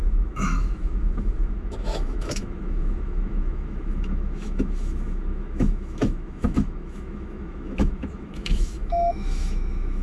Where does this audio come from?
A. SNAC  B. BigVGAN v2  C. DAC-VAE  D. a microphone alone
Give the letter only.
C